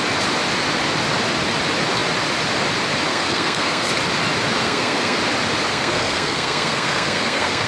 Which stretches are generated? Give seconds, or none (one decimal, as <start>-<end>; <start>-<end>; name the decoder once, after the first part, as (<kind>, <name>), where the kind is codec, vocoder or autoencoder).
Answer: 3.1-3.9 (codec, SNAC); 4.6-5.2; 5.7-7.7